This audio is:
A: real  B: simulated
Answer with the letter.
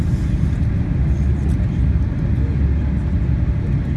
A